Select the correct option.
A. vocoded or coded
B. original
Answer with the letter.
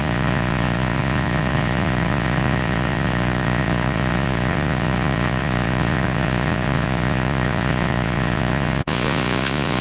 A